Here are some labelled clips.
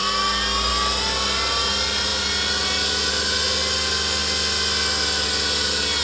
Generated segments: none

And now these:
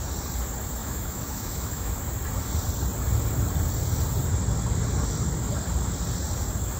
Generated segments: 0.8-1.9 (autoencoder, DAC-VAE)

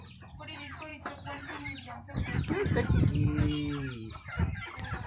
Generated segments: none

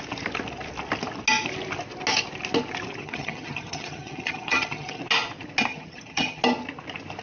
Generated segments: 3.0-5.0 (vocoder, HiFi-GAN); 5.7-6.4

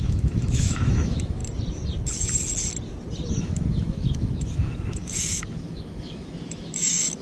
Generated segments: 0.0-1.4 (autoencoder, DAC-VAE); 3.4-7.2